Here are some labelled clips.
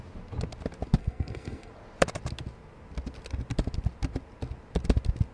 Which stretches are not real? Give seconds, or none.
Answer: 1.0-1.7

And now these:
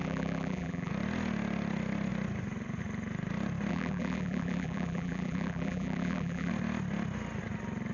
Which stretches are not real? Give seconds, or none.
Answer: 0.0-0.9; 3.7-6.5

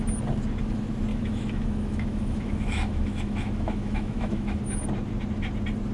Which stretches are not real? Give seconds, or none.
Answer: 1.1-4.6

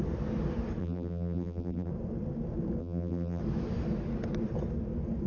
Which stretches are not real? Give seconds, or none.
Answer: 0.8-1.9; 2.8-3.4